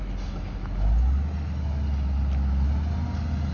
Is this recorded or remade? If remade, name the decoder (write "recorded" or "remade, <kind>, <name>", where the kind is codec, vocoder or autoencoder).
recorded